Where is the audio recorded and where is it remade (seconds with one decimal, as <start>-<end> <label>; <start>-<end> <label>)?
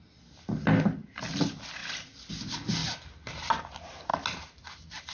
0.0-1.8 recorded; 1.8-2.3 remade; 2.3-2.8 recorded; 2.8-3.6 remade; 3.6-5.1 recorded